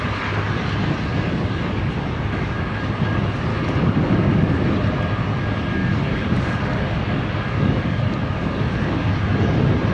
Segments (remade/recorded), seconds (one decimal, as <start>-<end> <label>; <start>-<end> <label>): 0.0-1.1 recorded; 1.1-2.9 remade; 2.9-3.5 recorded; 3.5-4.5 remade; 4.5-5.8 recorded; 5.8-9.1 remade; 9.1-9.9 recorded